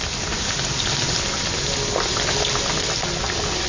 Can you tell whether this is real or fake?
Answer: real